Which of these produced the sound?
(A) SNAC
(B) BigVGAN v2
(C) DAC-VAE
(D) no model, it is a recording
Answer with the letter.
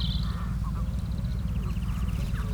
D